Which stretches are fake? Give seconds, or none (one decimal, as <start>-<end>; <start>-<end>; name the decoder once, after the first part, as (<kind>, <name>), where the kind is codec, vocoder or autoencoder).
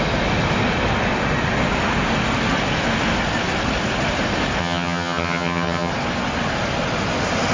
4.6-5.9 (vocoder, HiFi-GAN)